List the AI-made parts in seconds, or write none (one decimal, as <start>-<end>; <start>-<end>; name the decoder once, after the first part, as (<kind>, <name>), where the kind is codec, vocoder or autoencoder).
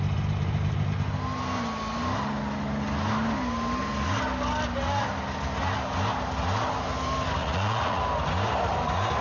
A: 7.4-8.0 (vocoder, Vocos)